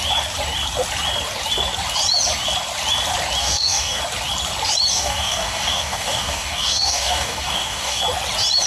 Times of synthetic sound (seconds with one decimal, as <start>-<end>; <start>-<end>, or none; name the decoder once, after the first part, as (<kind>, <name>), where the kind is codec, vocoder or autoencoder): 3.4-4.0 (codec, DAC); 4.9-8.0

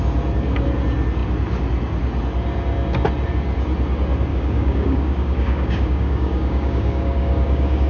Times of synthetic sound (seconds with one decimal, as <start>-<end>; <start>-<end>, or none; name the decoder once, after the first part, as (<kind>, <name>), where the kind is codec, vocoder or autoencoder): 4.3-7.9 (codec, DAC)

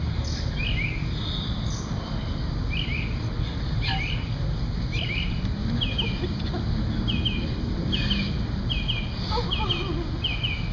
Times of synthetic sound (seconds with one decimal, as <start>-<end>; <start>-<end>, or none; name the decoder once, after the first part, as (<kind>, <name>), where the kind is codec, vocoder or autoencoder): none

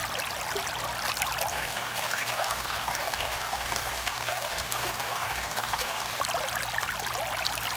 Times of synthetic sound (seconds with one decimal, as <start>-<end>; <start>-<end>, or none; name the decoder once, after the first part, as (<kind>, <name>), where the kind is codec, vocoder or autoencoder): 1.5-6.2 (codec, DAC)